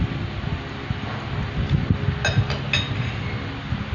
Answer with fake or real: real